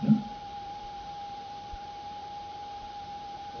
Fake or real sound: fake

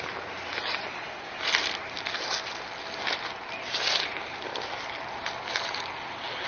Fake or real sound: real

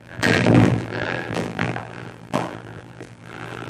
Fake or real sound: fake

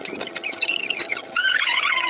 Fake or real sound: fake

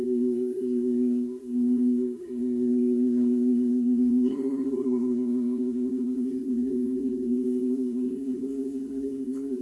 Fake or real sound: fake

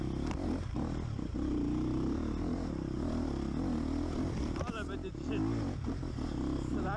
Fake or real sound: real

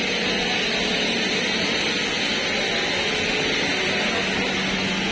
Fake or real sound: real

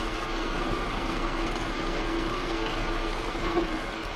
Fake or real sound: fake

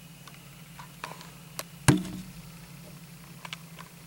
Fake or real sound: real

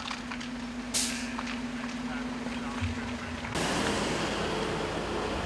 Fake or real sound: real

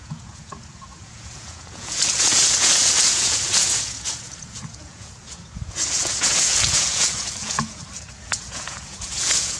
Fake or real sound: fake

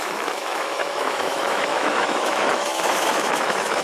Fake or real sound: fake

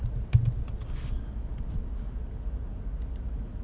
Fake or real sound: real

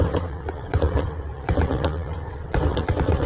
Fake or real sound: fake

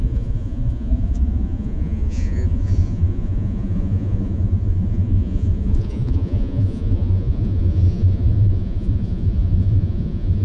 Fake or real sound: fake